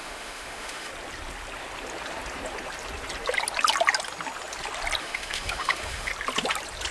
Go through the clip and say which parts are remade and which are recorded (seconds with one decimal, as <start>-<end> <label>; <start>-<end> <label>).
0.0-0.9 remade; 0.9-5.0 recorded; 5.0-6.1 remade; 6.1-6.9 recorded